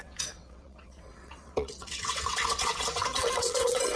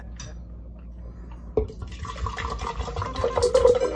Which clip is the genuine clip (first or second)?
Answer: second